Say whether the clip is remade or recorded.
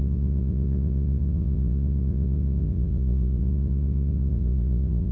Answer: remade